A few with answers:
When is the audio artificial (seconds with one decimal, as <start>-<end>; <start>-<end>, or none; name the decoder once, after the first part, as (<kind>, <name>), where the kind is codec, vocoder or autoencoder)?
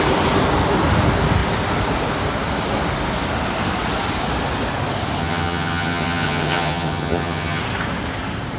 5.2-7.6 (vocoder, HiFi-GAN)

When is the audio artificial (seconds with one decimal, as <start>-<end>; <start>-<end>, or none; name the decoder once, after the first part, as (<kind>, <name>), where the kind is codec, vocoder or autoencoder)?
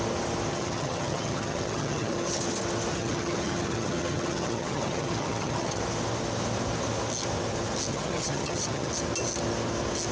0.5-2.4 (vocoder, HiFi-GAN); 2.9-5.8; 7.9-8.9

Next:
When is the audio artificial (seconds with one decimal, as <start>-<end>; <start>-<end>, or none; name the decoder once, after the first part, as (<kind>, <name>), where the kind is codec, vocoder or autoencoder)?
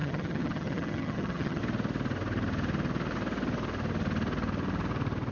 0.0-1.6 (vocoder, HiFi-GAN)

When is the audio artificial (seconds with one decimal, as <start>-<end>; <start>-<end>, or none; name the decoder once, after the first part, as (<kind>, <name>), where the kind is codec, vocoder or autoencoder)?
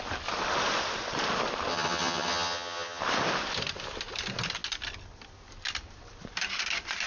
1.7-3.0 (vocoder, HiFi-GAN)